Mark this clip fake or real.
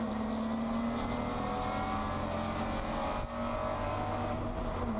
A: real